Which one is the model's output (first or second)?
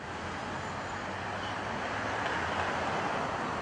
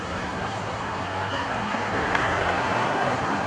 second